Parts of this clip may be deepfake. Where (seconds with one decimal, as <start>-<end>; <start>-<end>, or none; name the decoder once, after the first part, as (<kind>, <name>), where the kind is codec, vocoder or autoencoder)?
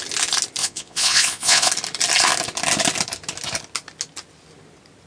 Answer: 0.6-1.7 (vocoder, Vocos)